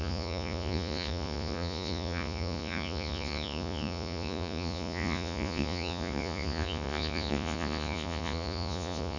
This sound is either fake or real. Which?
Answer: fake